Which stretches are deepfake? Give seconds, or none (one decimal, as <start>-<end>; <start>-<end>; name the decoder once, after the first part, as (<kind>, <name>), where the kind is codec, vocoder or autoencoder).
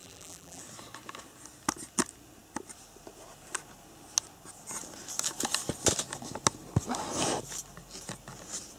0.0-0.6 (vocoder, BigVGAN v2)